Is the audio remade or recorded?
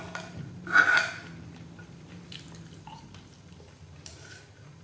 recorded